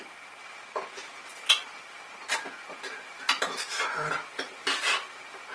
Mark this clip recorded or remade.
recorded